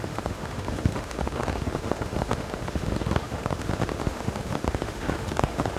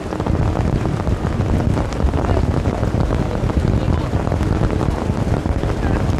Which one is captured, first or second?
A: second